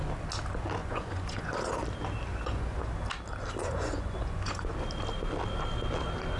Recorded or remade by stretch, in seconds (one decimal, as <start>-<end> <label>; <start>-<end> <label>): 0.0-0.8 recorded; 0.8-1.5 remade; 1.5-2.3 recorded; 2.3-2.9 remade; 2.9-3.6 recorded; 3.6-4.7 remade; 4.7-6.4 recorded